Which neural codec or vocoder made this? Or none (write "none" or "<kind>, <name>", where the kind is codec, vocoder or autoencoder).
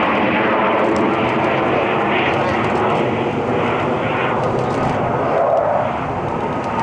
none